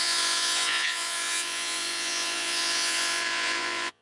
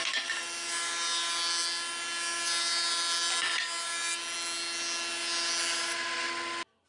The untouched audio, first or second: second